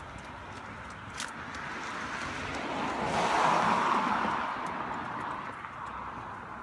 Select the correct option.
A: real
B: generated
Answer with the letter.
A